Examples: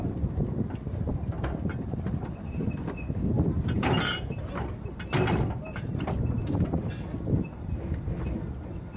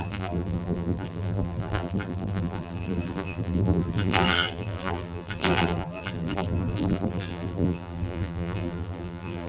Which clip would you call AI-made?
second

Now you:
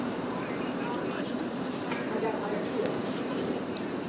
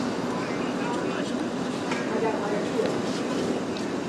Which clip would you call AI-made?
first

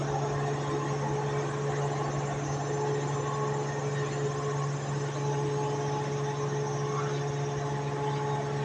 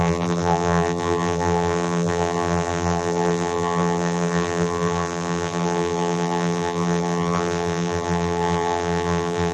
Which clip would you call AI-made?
second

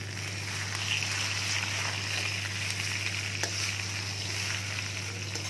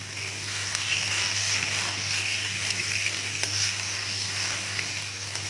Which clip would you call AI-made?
second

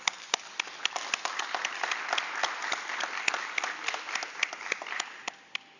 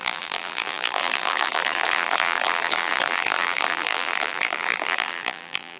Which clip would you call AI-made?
second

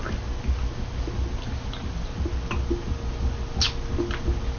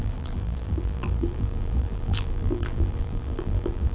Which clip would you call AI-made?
second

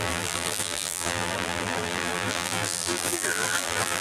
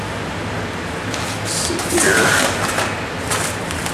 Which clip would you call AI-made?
first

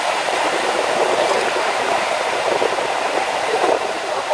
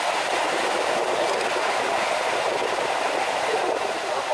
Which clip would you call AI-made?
first